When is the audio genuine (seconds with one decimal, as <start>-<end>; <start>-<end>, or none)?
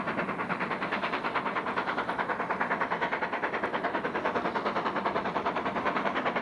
1.2-5.0